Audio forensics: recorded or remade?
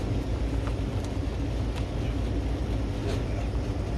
recorded